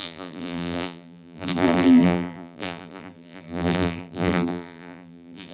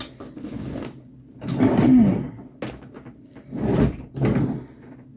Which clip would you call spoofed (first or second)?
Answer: first